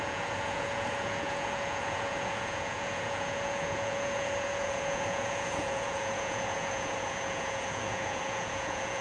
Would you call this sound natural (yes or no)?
no